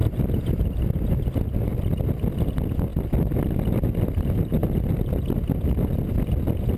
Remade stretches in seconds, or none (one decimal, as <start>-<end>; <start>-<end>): none